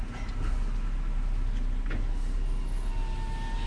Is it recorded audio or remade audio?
recorded